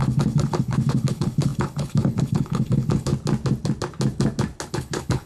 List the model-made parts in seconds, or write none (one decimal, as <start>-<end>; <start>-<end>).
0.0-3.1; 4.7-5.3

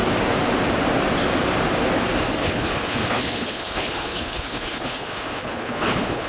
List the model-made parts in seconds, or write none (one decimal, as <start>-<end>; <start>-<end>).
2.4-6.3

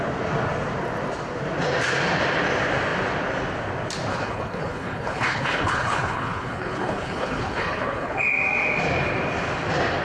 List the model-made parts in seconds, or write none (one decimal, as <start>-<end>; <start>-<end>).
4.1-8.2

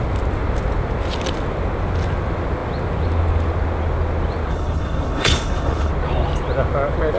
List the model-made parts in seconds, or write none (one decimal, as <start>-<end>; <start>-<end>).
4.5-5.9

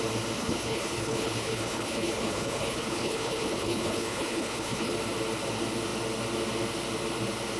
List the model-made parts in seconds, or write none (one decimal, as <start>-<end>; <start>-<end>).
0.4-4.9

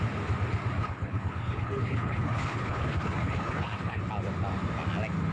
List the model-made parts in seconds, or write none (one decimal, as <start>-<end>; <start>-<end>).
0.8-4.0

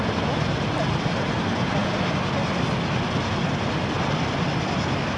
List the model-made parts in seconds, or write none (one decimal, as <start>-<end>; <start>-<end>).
none

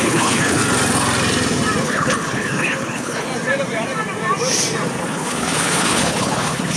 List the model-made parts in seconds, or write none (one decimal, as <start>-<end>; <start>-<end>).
0.0-0.6; 1.8-3.3; 5.0-6.8